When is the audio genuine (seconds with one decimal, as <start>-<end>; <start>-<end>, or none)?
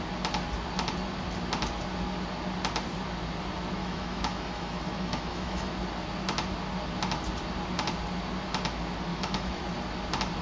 0.0-3.8; 5.7-9.1; 9.6-10.4